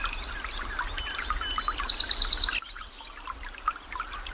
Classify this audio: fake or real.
real